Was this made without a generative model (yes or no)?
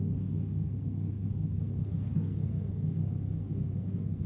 no